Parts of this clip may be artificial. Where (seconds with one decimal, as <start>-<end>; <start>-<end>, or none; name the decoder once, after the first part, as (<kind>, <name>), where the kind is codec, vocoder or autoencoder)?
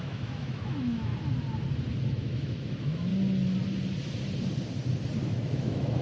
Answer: 0.0-1.1 (autoencoder, DAC-VAE); 2.1-3.1; 5.2-6.0